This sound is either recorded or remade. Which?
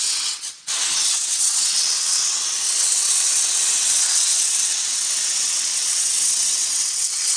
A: remade